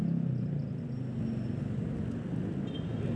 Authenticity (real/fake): real